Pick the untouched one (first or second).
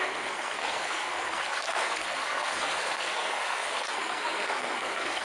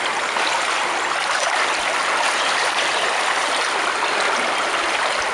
second